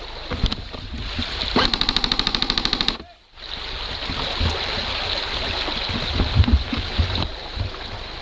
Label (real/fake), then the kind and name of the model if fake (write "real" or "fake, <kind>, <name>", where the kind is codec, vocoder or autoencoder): real